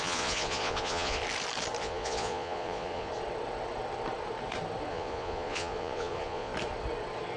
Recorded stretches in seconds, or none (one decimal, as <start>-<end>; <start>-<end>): 1.2-1.8; 3.1-4.9; 6.5-7.4